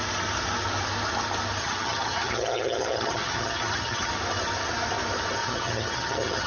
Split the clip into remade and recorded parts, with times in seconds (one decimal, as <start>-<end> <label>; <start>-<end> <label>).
0.0-1.6 recorded; 1.6-4.1 remade; 4.1-5.4 recorded; 5.4-6.5 remade